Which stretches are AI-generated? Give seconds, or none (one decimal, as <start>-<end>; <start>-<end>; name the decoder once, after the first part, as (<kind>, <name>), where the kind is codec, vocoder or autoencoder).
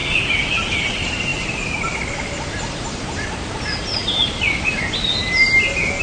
none